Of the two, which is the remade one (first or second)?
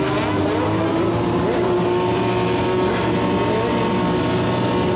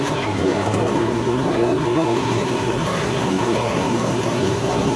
second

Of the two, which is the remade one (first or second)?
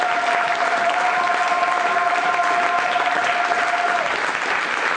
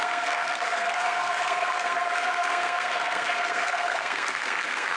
second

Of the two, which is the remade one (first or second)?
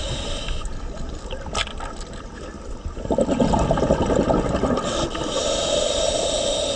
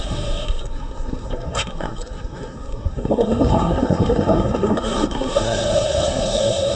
second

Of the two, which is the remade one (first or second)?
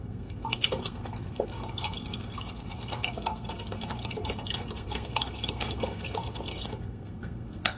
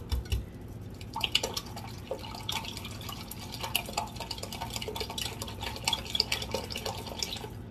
first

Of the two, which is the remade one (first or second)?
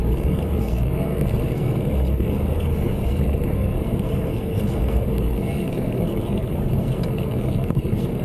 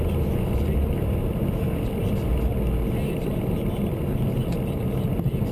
first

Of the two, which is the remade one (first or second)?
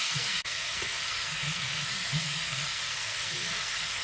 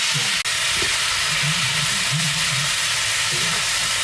first